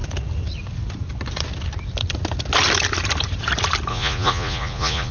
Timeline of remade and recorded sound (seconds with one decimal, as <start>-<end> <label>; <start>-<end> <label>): 0.0-3.9 recorded; 3.9-5.1 remade